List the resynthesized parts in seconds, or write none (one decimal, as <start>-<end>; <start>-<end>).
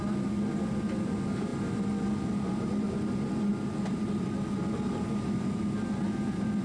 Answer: none